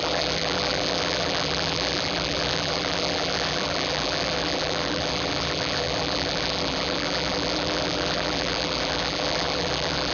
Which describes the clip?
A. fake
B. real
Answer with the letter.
A